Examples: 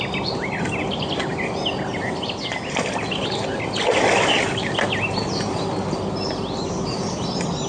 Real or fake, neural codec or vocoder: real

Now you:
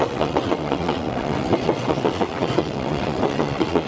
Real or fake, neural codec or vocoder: fake, vocoder, WaveNeXt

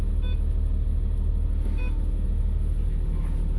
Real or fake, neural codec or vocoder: real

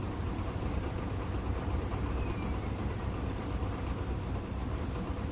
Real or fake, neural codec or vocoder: real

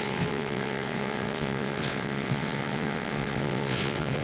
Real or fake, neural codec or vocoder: fake, vocoder, WaveNeXt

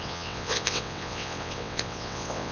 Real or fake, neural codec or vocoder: fake, vocoder, WaveNeXt